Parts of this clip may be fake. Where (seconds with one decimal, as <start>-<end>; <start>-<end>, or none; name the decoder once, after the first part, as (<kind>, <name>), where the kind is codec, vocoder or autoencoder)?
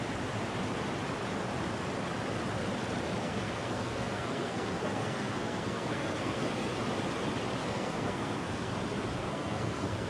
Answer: 3.2-6.8 (codec, SNAC); 7.6-8.7; 9.2-10.1